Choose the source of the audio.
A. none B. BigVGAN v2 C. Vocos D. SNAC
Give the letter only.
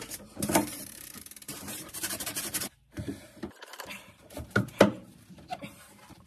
B